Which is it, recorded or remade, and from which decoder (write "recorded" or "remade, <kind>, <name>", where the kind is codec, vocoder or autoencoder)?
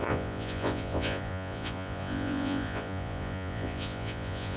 remade, vocoder, Vocos